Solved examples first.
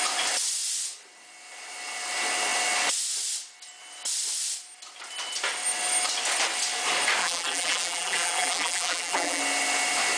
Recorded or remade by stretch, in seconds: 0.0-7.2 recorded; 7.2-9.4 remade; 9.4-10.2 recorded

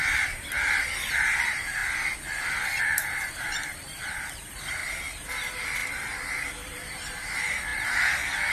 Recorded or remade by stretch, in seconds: 0.0-1.8 remade; 1.8-2.8 recorded; 2.8-4.8 remade; 4.8-5.3 recorded; 5.3-8.5 remade

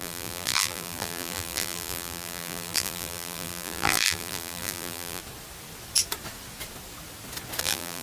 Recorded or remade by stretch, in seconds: 0.0-5.2 remade; 5.2-7.6 recorded; 7.6-8.0 remade

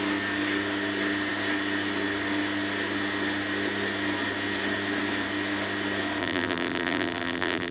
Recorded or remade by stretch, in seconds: 0.0-6.2 recorded; 6.2-7.7 remade

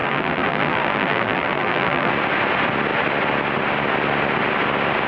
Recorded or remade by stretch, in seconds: 0.0-2.1 remade; 2.1-5.1 recorded

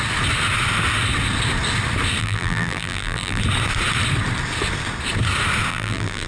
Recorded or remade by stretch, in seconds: 0.0-2.2 recorded; 2.2-3.4 remade; 3.4-5.7 recorded; 5.7-6.3 remade

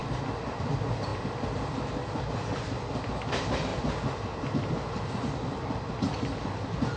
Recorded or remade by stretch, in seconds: 0.0-1.1 recorded; 1.1-1.7 remade; 1.7-7.0 recorded